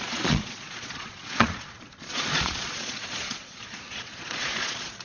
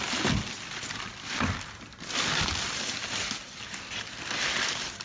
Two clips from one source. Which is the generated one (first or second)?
first